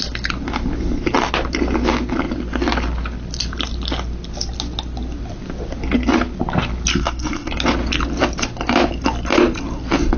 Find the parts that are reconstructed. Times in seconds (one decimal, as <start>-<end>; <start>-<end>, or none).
6.9-7.5